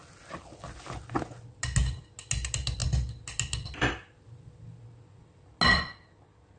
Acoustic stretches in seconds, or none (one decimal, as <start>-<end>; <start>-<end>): 0.0-6.6